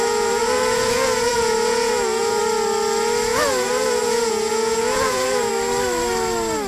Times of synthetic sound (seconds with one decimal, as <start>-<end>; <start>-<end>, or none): 0.0-2.4; 3.3-5.5